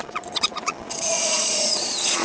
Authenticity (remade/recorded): remade